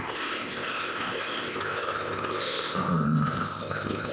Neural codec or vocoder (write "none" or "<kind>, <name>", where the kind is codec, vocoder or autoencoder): codec, ZipCodec